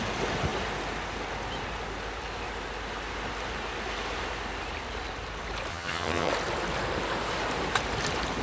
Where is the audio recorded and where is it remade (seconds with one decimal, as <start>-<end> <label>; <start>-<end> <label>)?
0.0-5.7 recorded; 5.7-6.3 remade; 6.3-8.4 recorded